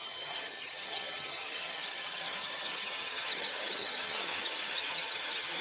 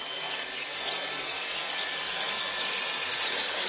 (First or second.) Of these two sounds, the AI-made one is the first